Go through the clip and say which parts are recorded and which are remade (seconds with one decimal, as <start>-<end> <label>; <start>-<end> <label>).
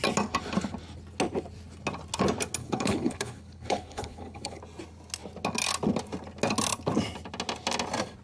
0.0-2.6 recorded; 2.6-4.6 remade; 4.6-8.2 recorded